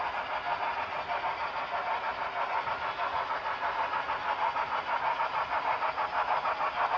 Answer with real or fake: real